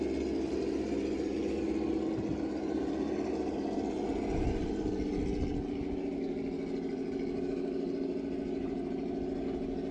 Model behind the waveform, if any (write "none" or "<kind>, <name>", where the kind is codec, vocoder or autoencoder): none